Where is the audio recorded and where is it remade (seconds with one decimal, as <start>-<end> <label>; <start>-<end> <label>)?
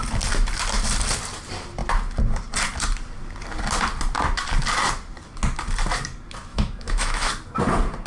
0.0-6.5 recorded; 6.5-7.3 remade; 7.3-8.1 recorded